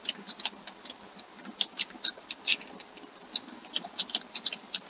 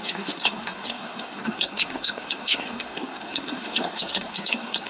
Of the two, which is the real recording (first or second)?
first